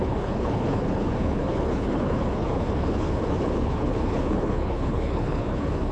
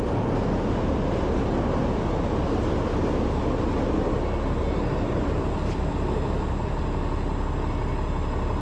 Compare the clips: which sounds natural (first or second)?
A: second